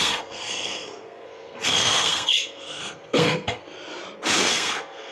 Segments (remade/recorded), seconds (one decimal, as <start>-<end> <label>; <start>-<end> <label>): 0.0-3.6 remade; 3.6-4.5 recorded; 4.5-5.1 remade